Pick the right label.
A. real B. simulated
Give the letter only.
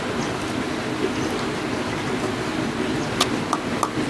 A